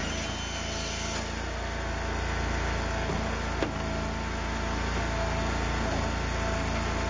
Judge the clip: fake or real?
real